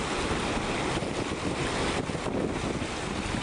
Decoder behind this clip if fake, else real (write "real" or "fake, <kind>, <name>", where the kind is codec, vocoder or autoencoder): real